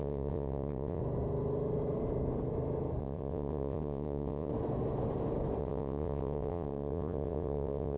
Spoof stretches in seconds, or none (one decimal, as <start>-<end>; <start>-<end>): 0.0-1.0; 3.0-4.5; 5.6-8.0